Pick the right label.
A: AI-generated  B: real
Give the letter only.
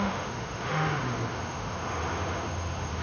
A